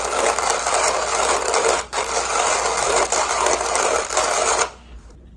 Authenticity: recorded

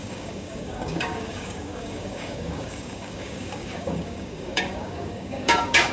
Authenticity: remade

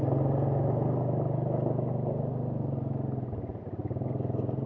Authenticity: recorded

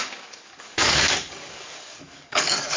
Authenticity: remade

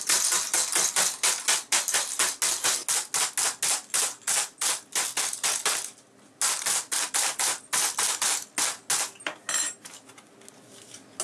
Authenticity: recorded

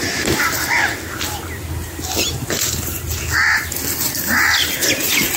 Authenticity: recorded